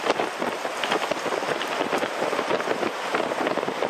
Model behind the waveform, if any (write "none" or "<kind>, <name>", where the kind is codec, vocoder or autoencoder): vocoder, BigVGAN v2